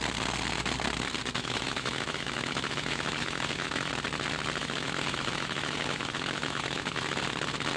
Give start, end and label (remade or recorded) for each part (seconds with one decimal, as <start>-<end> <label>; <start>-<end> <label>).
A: 0.0-1.4 recorded; 1.4-3.9 remade; 3.9-4.6 recorded; 4.6-7.2 remade; 7.2-7.8 recorded